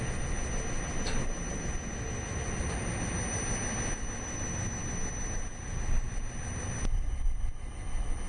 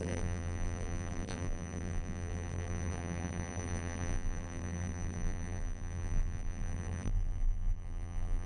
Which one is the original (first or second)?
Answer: first